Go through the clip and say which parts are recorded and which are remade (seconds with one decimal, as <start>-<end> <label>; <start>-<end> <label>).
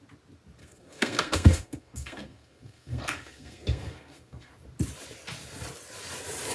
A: 0.0-0.6 recorded; 0.6-4.5 remade; 4.5-6.5 recorded